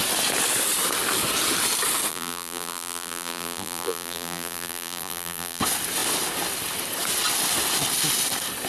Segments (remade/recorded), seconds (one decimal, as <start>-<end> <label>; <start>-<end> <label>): 0.0-2.1 recorded; 2.1-5.6 remade; 5.6-8.7 recorded